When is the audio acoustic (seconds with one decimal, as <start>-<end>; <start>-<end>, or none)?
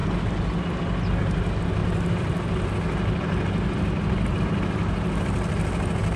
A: 0.0-6.2